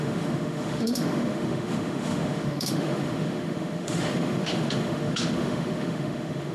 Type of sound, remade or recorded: remade